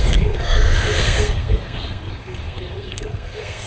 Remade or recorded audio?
remade